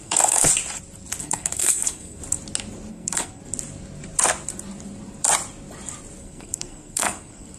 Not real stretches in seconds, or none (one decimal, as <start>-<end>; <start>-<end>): 0.0-0.5; 1.2-2.2; 2.9-3.4; 6.2-7.6